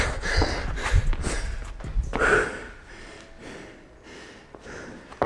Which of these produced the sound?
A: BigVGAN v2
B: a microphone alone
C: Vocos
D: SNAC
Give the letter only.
B